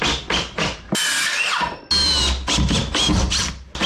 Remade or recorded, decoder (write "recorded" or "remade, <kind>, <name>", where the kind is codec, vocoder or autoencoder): recorded